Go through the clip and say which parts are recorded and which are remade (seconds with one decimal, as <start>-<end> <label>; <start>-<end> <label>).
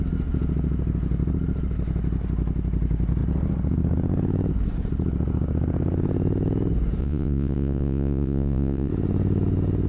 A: 0.0-7.0 recorded; 7.0-8.9 remade; 8.9-9.9 recorded